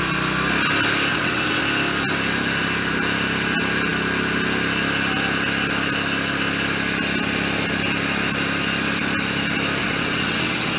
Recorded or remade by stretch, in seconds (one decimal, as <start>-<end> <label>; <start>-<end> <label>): 0.0-1.1 recorded; 1.1-1.6 remade; 1.6-9.8 recorded; 9.8-10.8 remade